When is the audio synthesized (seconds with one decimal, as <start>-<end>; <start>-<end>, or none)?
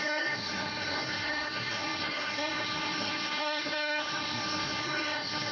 0.0-5.5